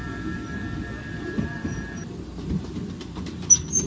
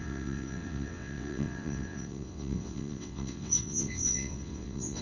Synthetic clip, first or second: second